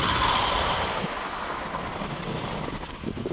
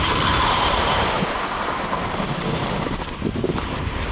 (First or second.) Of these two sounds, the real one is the first